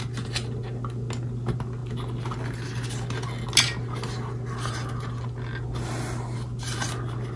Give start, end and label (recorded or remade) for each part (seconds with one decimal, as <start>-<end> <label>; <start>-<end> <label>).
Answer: 0.0-7.4 recorded